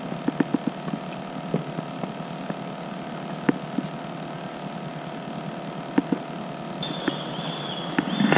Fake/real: real